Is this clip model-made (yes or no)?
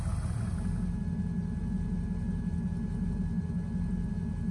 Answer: no